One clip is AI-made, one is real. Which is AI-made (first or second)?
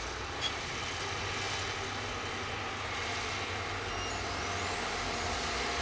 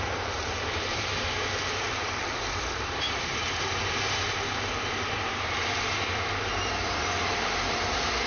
second